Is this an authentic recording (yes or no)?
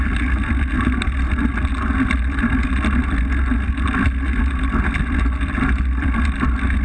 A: yes